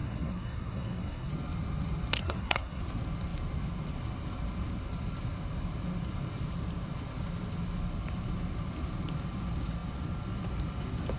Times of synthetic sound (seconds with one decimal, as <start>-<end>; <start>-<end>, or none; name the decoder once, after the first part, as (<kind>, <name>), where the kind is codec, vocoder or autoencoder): 0.0-1.3 (codec, SNAC); 2.2-2.8